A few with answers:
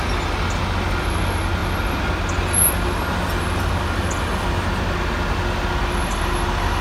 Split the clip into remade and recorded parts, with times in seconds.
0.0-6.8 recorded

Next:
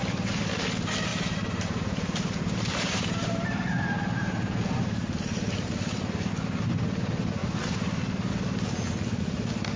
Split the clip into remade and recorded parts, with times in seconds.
0.0-1.1 recorded; 1.1-6.3 remade; 6.3-9.8 recorded

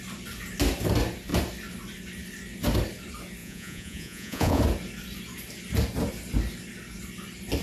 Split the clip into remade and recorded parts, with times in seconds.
0.0-3.4 recorded; 3.4-4.6 remade; 4.6-7.6 recorded

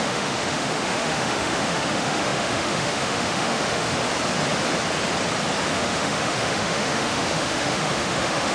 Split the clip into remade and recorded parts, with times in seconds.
0.0-4.0 remade; 4.0-5.7 recorded; 5.7-8.5 remade

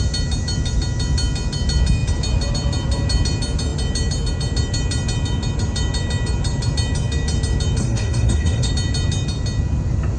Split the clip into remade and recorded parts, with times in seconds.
0.0-7.8 recorded; 7.8-8.7 remade; 8.7-10.2 recorded